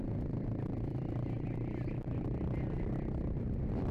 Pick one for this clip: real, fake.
fake